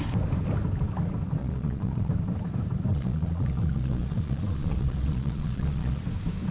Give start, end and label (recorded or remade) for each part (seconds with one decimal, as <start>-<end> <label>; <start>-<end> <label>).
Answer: 0.0-1.4 recorded; 1.4-2.1 remade; 2.1-2.9 recorded; 2.9-6.0 remade; 6.0-6.5 recorded

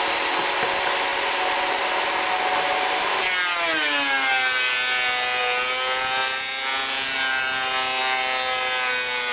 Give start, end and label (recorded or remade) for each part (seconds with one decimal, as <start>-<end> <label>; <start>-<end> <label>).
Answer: 0.0-9.3 recorded

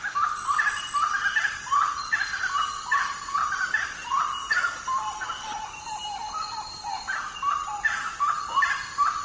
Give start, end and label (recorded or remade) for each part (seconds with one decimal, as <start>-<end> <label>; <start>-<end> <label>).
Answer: 0.0-9.2 recorded

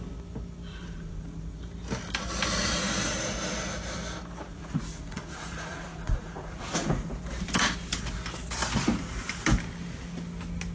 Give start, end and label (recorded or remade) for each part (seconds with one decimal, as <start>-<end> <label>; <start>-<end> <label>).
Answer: 0.0-0.7 recorded; 0.7-1.6 remade; 1.6-4.5 recorded; 4.5-7.1 remade; 7.1-10.7 recorded

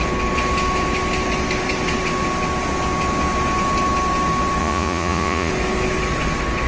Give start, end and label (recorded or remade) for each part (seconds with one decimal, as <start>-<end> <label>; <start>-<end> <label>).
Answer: 0.0-4.6 recorded; 4.6-5.5 remade; 5.5-6.7 recorded

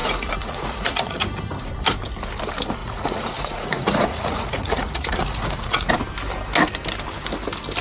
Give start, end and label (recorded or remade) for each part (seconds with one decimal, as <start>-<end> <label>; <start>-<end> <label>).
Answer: 0.0-1.2 remade; 1.2-2.8 recorded; 2.8-5.9 remade; 5.9-7.8 recorded